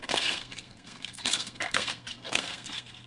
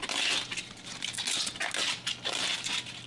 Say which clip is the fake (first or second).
first